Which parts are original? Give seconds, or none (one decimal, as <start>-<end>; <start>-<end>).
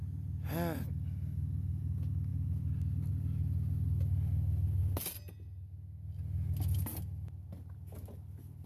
0.0-8.7